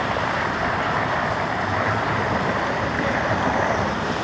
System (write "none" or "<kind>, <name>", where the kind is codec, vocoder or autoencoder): vocoder, BigVGAN v2